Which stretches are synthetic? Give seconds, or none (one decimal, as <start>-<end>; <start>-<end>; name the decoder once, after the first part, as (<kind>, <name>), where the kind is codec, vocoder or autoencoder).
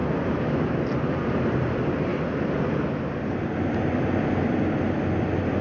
1.3-2.1 (vocoder, BigVGAN v2)